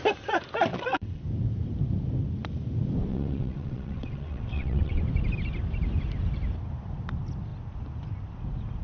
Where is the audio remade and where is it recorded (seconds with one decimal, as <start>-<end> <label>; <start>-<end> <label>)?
0.0-0.7 recorded; 0.7-1.2 remade; 1.2-3.1 recorded; 3.1-5.0 remade; 5.0-8.8 recorded